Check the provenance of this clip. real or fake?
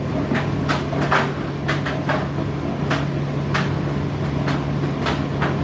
real